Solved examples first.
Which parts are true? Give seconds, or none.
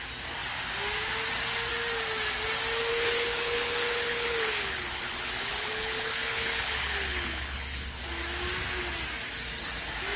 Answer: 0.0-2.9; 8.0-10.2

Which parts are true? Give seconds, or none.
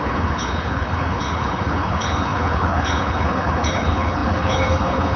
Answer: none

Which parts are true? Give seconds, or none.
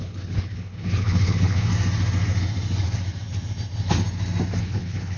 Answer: 1.7-4.6